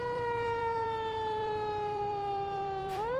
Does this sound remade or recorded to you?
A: remade